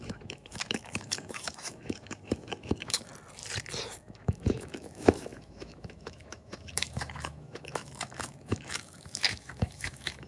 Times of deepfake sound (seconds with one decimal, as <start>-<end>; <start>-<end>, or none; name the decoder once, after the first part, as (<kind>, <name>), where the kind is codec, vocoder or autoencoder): 0.0-3.1 (autoencoder, DAC-VAE); 4.0-10.3